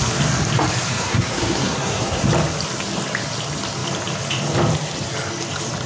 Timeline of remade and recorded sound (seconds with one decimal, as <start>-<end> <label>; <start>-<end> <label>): 0.0-0.9 recorded; 0.9-2.2 remade; 2.2-5.9 recorded